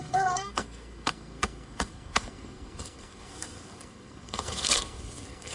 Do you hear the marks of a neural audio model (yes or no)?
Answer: yes